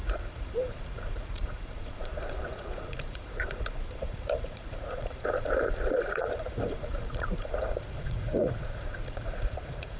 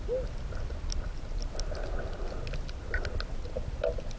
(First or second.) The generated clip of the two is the first